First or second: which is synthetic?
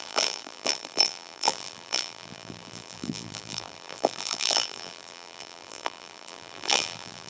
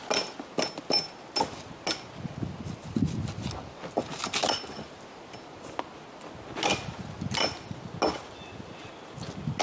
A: first